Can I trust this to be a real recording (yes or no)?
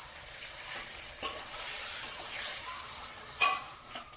no